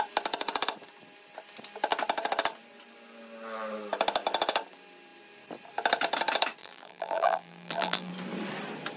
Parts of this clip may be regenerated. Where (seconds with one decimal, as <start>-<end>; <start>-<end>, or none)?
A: 6.6-8.1